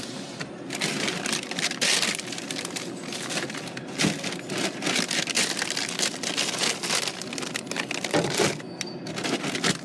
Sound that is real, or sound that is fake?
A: real